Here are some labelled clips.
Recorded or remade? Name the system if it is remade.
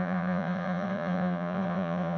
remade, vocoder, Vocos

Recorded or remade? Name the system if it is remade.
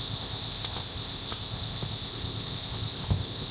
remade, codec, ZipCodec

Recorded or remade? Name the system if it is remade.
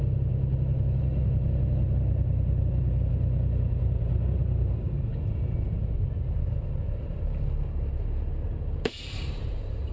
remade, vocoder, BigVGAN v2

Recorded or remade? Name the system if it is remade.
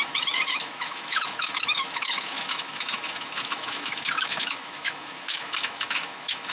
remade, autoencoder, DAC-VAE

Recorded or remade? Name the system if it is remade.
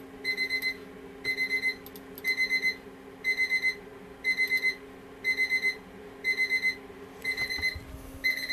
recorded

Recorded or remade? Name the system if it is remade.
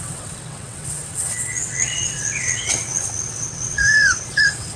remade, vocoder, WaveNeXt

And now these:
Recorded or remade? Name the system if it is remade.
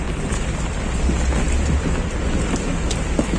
recorded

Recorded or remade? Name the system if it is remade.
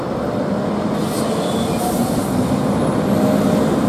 recorded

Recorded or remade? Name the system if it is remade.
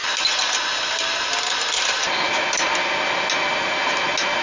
recorded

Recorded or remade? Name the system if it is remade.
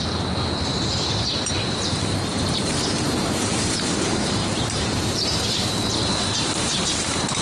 remade, vocoder, BigVGAN v2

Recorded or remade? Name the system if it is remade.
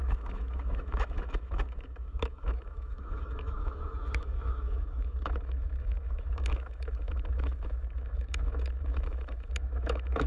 remade, autoencoder, DAC-VAE